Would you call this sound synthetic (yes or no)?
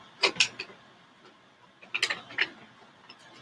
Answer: no